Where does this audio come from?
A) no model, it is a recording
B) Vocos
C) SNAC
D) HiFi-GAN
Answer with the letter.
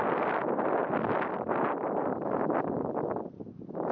A